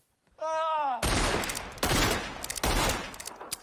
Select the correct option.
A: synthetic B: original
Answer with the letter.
B